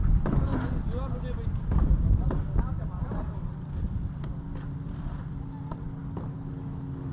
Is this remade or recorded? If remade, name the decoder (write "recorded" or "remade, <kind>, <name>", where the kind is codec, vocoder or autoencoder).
recorded